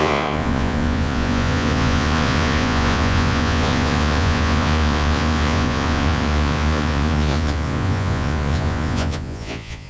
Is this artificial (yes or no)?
yes